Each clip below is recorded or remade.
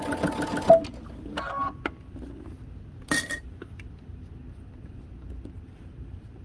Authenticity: recorded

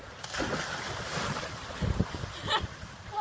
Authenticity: recorded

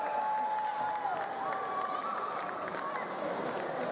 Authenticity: recorded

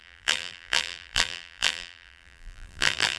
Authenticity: remade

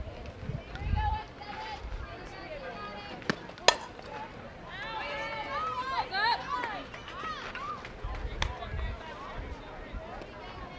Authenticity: recorded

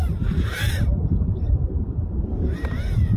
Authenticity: remade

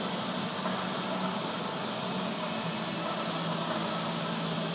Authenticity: recorded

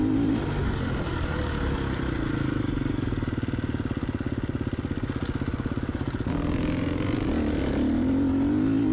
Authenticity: recorded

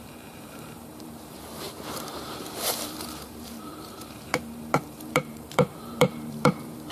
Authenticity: remade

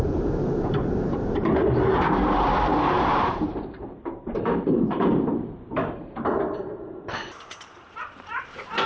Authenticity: remade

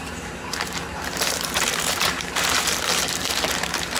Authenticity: remade